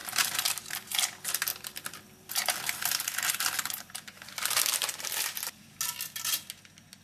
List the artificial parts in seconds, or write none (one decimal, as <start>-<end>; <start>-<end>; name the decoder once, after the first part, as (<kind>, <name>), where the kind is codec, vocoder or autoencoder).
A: 0.0-0.9 (vocoder, BigVGAN v2); 1.5-5.7